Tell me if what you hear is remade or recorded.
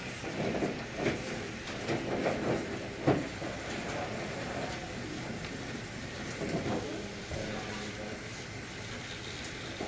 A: recorded